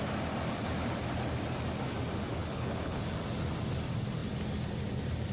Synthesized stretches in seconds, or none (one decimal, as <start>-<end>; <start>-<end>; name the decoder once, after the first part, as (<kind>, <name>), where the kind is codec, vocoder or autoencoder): 2.4-3.0 (codec, HILCodec)